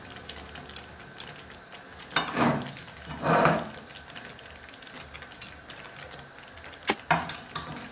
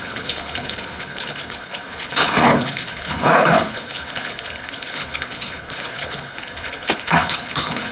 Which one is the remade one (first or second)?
second